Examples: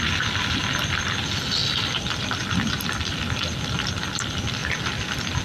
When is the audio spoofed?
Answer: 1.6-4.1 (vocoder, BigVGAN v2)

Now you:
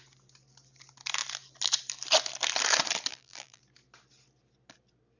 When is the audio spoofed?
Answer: 3.1-3.6 (vocoder, BigVGAN v2)

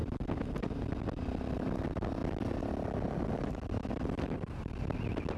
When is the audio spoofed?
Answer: none

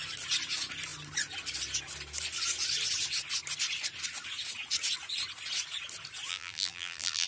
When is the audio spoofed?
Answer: 6.3-7.3 (vocoder, BigVGAN v2)

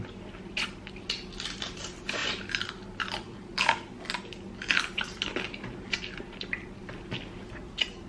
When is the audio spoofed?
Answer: none

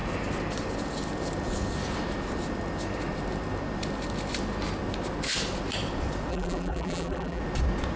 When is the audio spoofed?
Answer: 6.3-7.4 (vocoder, BigVGAN v2)